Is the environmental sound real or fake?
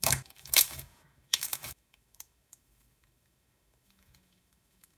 fake